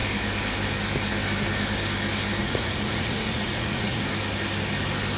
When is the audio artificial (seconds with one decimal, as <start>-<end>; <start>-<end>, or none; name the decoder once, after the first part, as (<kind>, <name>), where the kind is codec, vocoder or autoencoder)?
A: 2.4-4.0 (vocoder, Vocos)